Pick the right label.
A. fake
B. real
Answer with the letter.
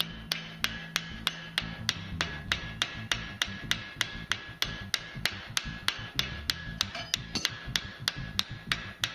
B